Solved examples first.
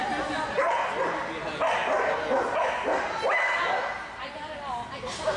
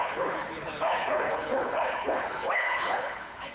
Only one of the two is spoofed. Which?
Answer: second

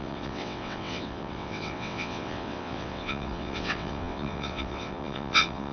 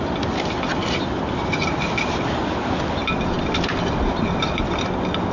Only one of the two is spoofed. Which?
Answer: first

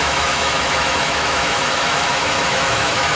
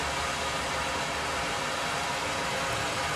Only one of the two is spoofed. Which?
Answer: first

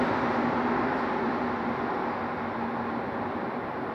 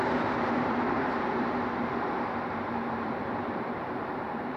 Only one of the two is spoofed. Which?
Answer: second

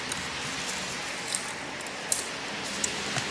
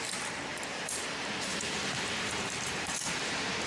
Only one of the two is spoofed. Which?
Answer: second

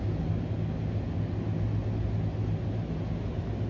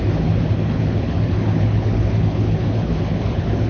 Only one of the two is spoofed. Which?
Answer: second